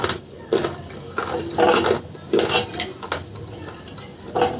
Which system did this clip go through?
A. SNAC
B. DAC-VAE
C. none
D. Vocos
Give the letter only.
C